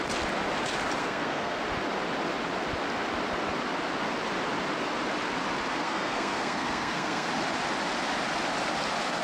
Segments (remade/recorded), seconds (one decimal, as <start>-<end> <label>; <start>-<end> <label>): 0.0-1.0 recorded; 1.0-1.6 remade; 1.6-5.7 recorded; 5.7-7.3 remade; 7.3-9.2 recorded